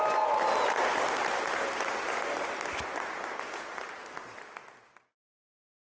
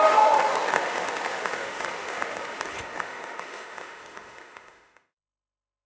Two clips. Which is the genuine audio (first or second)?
first